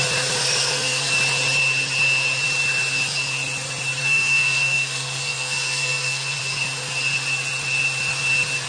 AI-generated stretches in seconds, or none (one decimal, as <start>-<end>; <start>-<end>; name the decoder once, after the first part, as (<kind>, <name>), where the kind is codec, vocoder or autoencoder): 0.4-1.1 (codec, SNAC); 4.0-6.4